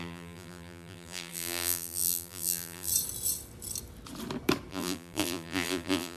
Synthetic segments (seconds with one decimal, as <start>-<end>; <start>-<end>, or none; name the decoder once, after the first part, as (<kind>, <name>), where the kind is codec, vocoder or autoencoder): 0.0-2.9 (vocoder, BigVGAN v2); 4.7-6.2